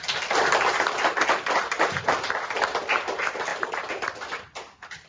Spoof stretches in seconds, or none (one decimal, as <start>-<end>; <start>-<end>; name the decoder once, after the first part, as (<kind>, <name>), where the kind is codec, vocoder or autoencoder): none